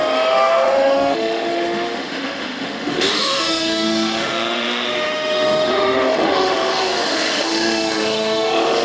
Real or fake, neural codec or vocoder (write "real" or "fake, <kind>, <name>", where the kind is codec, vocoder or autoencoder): fake, autoencoder, DAC-VAE